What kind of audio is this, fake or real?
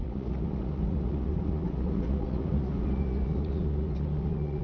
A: fake